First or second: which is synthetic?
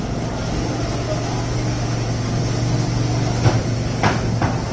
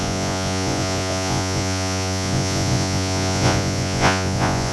second